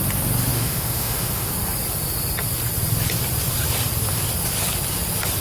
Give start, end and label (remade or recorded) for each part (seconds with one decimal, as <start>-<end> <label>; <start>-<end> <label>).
0.0-0.5 recorded; 0.5-1.5 remade; 1.5-5.4 recorded